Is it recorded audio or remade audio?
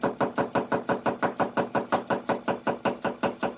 recorded